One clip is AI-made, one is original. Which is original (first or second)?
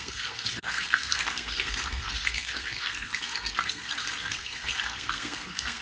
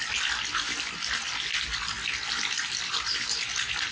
second